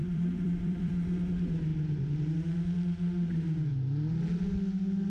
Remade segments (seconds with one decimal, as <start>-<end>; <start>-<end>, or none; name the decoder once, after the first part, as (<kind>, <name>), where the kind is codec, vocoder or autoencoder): 0.0-0.9 (vocoder, BigVGAN v2)